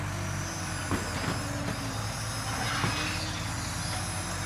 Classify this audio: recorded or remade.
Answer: recorded